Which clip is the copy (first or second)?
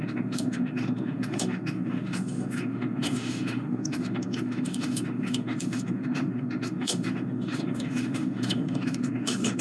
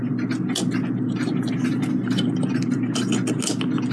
first